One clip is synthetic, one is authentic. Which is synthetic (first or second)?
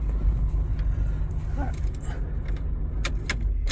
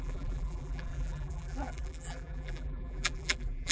second